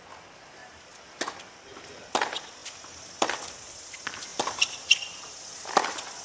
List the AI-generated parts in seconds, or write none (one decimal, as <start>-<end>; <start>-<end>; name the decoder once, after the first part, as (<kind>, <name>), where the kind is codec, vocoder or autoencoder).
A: 0.6-1.3 (vocoder, BigVGAN v2); 4.3-5.3